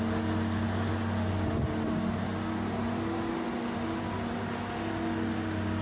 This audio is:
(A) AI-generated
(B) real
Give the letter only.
B